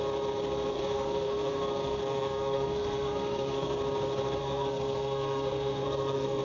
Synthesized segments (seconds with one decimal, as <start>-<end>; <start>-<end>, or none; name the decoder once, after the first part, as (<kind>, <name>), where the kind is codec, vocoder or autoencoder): 0.7-3.8 (codec, SNAC); 4.4-6.4